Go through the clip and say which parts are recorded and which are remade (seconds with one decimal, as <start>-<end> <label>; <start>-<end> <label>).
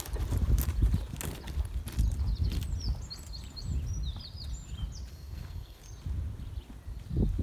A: 0.0-5.1 recorded; 5.1-5.8 remade; 5.8-7.4 recorded